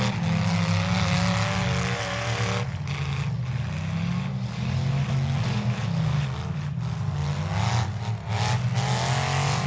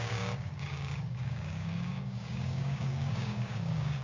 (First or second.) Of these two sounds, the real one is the first